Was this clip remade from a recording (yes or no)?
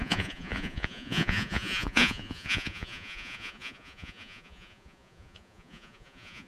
yes